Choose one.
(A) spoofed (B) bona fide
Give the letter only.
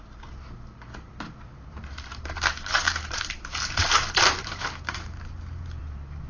A